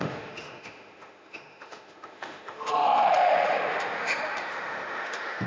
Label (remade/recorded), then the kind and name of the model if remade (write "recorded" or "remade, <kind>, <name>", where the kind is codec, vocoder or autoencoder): remade, autoencoder, DAC-VAE